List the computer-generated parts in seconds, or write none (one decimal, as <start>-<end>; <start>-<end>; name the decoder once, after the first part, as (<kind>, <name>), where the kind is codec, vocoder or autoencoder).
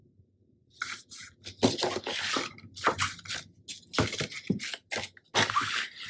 none